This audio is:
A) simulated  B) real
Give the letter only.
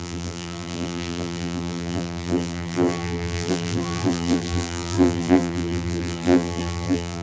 A